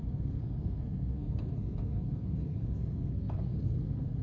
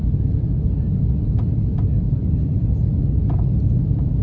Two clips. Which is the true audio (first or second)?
second